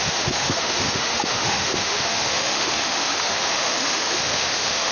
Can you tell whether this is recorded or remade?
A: remade